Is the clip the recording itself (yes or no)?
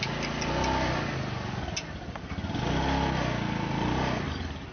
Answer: yes